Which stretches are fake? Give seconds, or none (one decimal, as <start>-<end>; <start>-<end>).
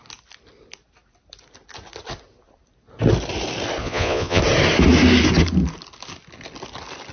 3.8-4.4